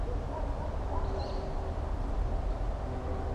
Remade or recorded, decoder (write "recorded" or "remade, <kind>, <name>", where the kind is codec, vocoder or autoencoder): recorded